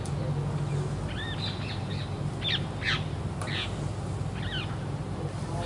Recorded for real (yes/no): yes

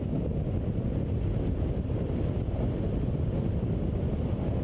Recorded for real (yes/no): yes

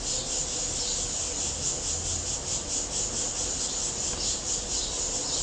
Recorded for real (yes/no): yes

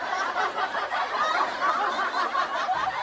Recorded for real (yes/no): no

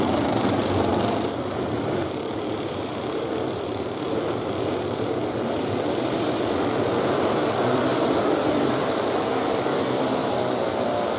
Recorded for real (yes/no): no